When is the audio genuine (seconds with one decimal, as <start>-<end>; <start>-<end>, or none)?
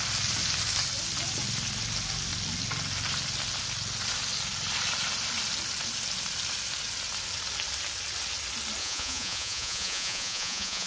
0.0-8.8